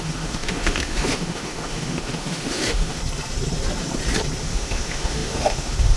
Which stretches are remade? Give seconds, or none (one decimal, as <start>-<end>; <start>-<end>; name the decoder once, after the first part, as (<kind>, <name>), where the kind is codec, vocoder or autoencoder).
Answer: 0.0-3.0 (autoencoder, DAC-VAE); 4.4-6.0